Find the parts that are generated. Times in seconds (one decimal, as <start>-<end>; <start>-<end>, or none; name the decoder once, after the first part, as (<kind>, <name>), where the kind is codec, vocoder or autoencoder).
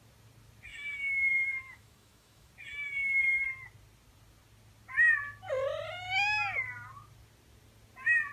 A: 0.7-2.5 (autoencoder, DAC-VAE)